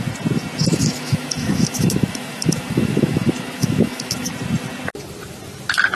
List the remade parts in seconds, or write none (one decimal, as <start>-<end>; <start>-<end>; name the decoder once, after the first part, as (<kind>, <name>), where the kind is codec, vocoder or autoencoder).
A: 0.7-4.3 (autoencoder, DAC-VAE)